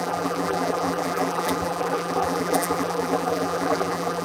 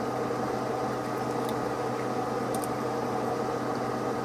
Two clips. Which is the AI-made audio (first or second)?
first